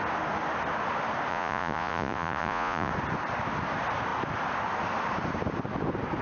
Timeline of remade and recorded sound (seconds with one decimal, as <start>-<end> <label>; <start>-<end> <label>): 0.0-1.3 recorded; 1.3-2.9 remade; 2.9-6.2 recorded